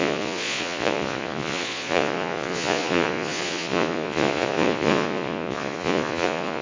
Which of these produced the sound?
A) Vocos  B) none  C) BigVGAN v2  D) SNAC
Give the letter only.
A